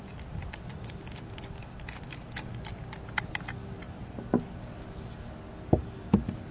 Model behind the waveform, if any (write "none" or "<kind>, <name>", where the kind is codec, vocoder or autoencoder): none